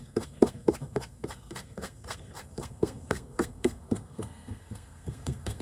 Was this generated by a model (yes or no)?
yes